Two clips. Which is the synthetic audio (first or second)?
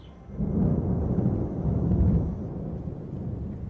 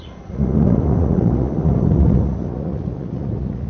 second